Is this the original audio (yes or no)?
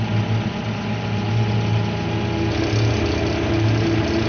yes